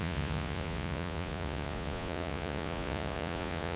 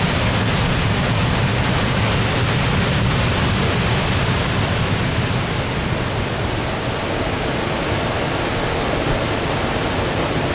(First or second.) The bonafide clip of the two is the second